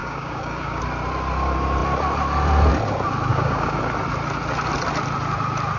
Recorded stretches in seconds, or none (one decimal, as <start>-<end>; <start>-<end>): 0.8-3.3; 3.8-5.8